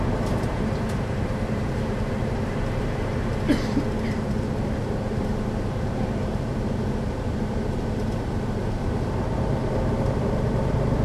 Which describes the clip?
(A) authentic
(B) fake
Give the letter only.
B